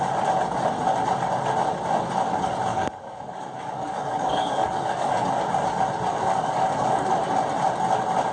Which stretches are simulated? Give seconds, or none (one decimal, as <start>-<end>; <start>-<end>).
2.7-5.3; 6.1-7.1

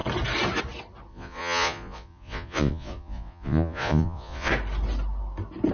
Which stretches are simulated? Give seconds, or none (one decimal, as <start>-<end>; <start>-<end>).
1.1-4.5

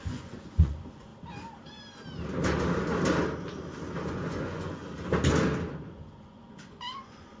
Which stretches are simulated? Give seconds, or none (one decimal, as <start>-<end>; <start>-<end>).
0.0-1.1; 4.1-4.8; 5.9-7.4